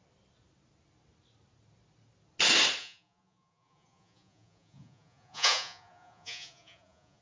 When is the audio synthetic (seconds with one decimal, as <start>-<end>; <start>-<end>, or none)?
2.8-7.2